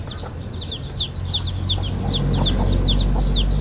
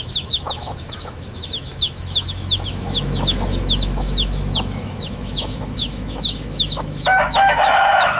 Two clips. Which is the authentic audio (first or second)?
first